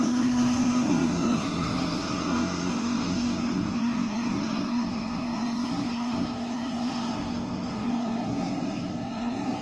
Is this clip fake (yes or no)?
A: yes